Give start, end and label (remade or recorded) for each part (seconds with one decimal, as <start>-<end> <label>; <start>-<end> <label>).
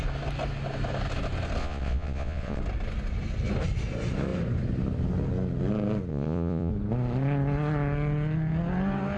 0.0-1.6 recorded; 1.6-2.6 remade; 2.6-6.1 recorded; 6.1-6.7 remade; 6.7-9.2 recorded